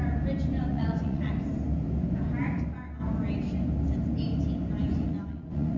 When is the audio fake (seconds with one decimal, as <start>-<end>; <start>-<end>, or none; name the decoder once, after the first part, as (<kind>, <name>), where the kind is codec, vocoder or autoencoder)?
0.7-1.3 (vocoder, Vocos); 4.8-5.8